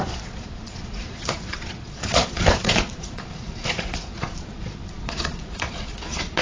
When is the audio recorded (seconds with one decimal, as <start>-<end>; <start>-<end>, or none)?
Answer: none